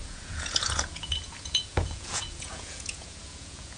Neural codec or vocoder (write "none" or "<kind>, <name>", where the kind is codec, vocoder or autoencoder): vocoder, Vocos